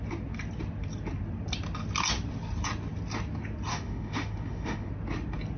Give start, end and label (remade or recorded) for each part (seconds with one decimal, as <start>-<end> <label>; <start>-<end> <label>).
0.0-3.7 recorded; 3.7-4.9 remade; 4.9-5.6 recorded